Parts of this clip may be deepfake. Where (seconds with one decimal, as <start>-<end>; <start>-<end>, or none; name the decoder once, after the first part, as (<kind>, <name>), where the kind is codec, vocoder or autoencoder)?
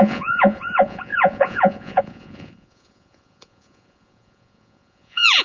0.0-5.4 (vocoder, Vocos)